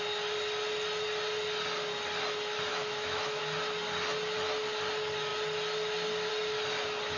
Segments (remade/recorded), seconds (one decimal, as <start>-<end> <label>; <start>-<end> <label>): 0.0-2.7 recorded; 2.7-3.4 remade; 3.4-7.2 recorded